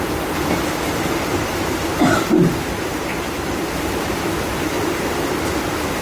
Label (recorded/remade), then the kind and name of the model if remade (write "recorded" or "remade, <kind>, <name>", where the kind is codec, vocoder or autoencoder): remade, vocoder, BigVGAN v2